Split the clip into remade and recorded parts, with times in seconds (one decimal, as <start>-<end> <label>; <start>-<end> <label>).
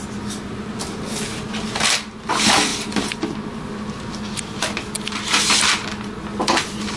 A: 0.0-7.0 recorded